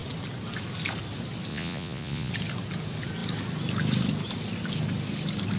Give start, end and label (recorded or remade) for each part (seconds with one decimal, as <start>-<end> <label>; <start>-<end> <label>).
0.0-1.5 recorded; 1.5-2.3 remade; 2.3-5.6 recorded